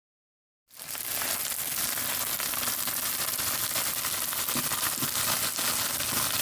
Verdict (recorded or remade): recorded